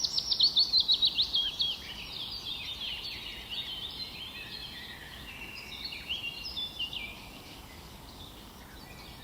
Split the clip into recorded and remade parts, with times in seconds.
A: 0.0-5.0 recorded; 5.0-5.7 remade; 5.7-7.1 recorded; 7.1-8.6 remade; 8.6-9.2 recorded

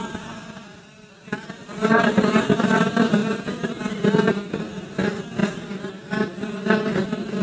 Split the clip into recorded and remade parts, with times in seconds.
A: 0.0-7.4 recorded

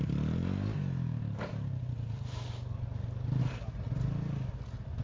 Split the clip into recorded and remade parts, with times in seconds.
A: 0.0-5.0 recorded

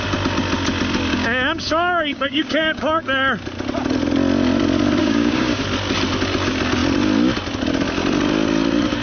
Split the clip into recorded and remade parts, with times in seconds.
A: 0.0-1.1 recorded; 1.1-3.0 remade; 3.0-5.0 recorded; 5.0-5.6 remade; 5.6-9.0 recorded

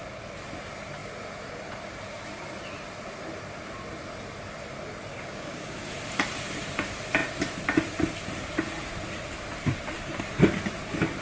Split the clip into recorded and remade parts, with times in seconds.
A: 0.0-5.1 recorded; 5.1-5.9 remade; 5.9-11.2 recorded

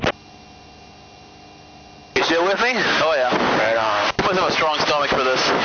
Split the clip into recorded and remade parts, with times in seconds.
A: 0.0-5.6 recorded

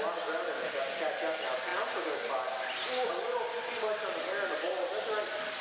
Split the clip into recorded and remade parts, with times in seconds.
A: 0.0-5.6 recorded

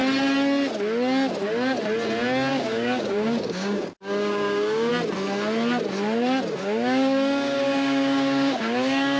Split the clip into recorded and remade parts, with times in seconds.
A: 0.0-2.5 recorded; 2.5-4.9 remade; 4.9-6.6 recorded; 6.6-9.2 remade